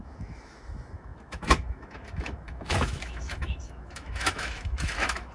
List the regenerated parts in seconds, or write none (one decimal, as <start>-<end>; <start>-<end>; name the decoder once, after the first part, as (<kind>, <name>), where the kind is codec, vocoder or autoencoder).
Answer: 0.0-5.3 (autoencoder, DAC-VAE)